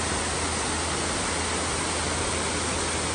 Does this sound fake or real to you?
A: real